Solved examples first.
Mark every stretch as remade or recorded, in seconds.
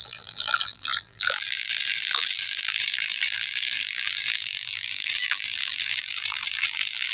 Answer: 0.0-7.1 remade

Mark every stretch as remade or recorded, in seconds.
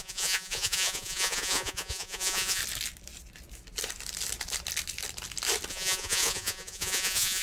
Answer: 0.0-2.6 remade; 2.6-5.7 recorded; 5.7-7.4 remade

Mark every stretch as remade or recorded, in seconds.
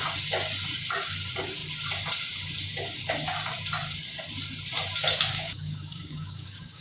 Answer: 0.0-5.0 recorded; 5.0-6.8 remade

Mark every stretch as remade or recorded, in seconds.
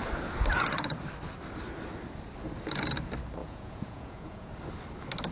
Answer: 0.0-3.4 recorded; 3.4-4.5 remade; 4.5-5.3 recorded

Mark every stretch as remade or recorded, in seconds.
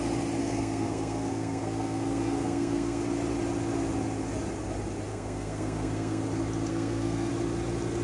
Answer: 0.0-0.4 recorded; 0.4-3.0 remade; 3.0-5.1 recorded; 5.1-6.2 remade; 6.2-6.7 recorded; 6.7-7.3 remade; 7.3-8.0 recorded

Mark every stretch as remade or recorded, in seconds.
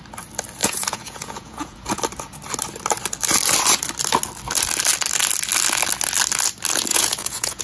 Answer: 0.0-0.6 recorded; 0.6-2.0 remade; 2.0-6.9 recorded; 6.9-7.6 remade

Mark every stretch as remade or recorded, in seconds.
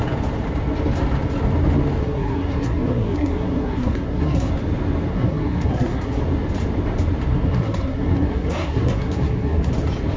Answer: 0.0-2.0 recorded; 2.0-4.5 remade; 4.5-5.1 recorded; 5.1-6.2 remade; 6.2-7.3 recorded; 7.3-9.7 remade; 9.7-10.2 recorded